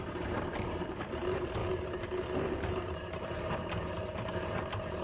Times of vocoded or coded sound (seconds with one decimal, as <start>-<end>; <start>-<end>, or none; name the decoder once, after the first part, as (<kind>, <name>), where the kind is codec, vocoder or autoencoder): 0.0-5.0 (vocoder, BigVGAN v2)